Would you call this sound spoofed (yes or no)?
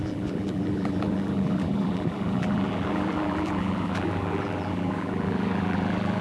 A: yes